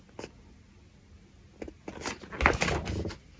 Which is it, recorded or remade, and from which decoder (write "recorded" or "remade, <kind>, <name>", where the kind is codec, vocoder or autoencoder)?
recorded